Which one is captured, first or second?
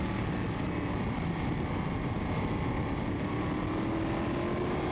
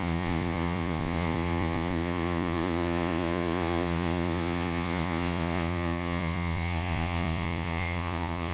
first